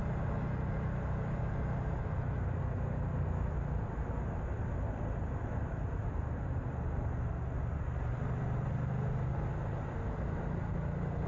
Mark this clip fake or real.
real